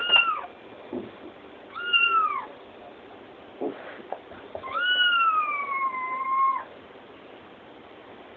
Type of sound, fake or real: real